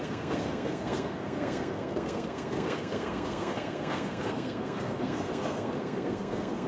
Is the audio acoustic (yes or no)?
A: no